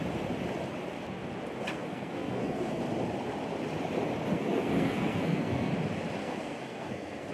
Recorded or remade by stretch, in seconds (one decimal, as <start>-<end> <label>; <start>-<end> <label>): 0.0-1.7 recorded; 1.7-2.8 remade; 2.8-4.3 recorded; 4.3-5.7 remade; 5.7-6.2 recorded; 6.2-7.3 remade